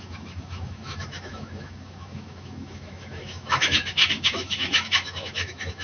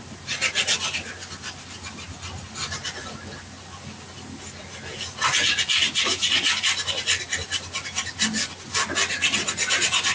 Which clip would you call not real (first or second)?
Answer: first